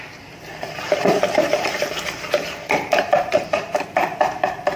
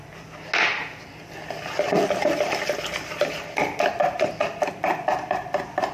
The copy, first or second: first